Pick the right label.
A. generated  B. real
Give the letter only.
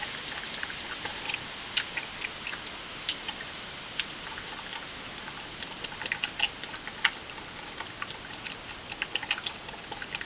B